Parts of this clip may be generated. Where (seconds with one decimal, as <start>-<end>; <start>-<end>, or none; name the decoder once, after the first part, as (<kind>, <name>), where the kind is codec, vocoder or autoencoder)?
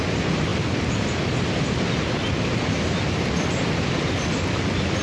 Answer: none